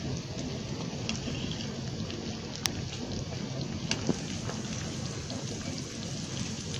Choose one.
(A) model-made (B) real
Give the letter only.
B